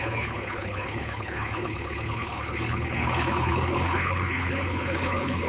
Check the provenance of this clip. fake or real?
fake